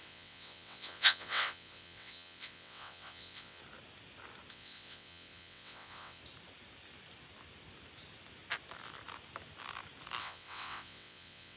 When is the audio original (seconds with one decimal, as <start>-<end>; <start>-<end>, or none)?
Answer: 3.6-4.5; 6.2-10.2